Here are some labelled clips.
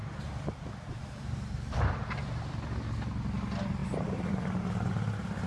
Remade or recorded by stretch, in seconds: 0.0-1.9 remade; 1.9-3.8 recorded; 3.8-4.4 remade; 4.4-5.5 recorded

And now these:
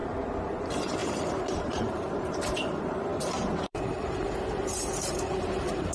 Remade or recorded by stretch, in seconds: 0.0-0.6 recorded; 0.6-5.9 remade

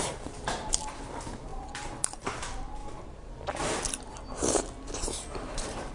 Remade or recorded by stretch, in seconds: 0.0-2.8 remade; 2.8-5.5 recorded; 5.5-5.9 remade

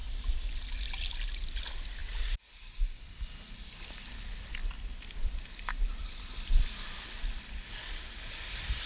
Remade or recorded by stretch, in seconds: 0.0-4.6 recorded; 4.6-8.9 remade

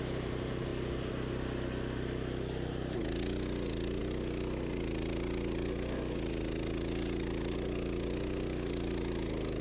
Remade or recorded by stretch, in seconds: 0.0-9.6 recorded

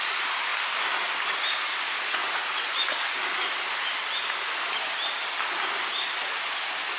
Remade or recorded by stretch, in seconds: 0.0-0.5 remade; 0.5-1.4 recorded; 1.4-2.4 remade; 2.4-4.3 recorded; 4.3-7.0 remade

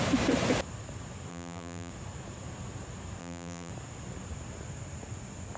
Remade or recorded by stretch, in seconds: 0.0-1.3 recorded; 1.3-1.9 remade; 1.9-3.2 recorded; 3.2-3.7 remade; 3.7-5.6 recorded